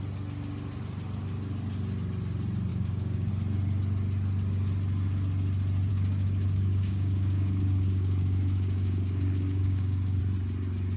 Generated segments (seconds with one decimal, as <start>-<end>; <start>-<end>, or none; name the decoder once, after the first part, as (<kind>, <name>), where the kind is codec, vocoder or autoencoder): 2.7-3.3 (codec, DAC); 5.9-10.2

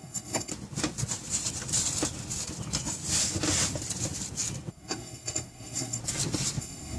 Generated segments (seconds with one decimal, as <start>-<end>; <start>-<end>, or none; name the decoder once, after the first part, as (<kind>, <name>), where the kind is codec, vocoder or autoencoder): 0.0-0.5 (codec, SNAC); 4.7-6.0; 6.6-7.0

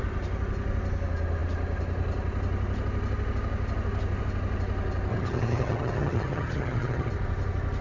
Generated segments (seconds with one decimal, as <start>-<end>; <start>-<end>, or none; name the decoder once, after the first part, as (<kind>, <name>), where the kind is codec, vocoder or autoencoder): 5.1-7.1 (vocoder, HiFi-GAN)

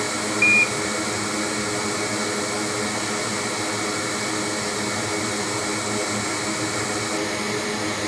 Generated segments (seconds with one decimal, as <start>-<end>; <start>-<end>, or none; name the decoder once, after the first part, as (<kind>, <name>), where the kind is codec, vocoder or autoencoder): none

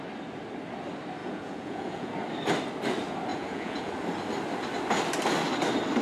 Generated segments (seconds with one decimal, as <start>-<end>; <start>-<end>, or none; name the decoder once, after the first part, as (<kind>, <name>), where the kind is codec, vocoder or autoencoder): 1.2-2.1 (vocoder, Vocos); 3.3-3.9